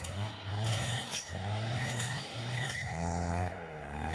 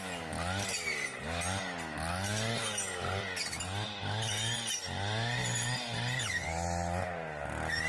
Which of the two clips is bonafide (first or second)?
second